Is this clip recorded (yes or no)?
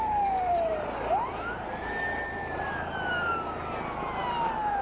yes